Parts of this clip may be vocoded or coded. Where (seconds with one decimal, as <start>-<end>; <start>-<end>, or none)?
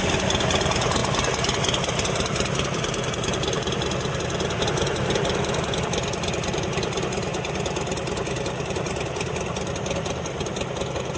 none